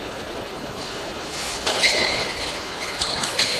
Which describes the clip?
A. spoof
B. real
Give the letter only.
A